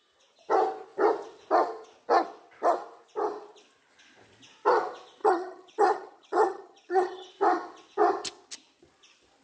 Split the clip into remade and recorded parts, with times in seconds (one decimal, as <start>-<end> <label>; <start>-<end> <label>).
0.0-5.2 recorded; 5.2-7.3 remade; 7.3-9.4 recorded